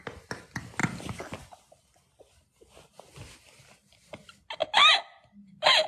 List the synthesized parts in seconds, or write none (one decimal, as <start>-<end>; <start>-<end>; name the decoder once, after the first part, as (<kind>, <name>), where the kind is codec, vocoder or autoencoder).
0.8-1.4 (vocoder, BigVGAN v2)